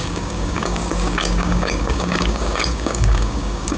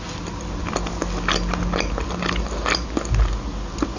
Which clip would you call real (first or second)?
second